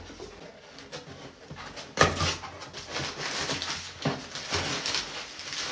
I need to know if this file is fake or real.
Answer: real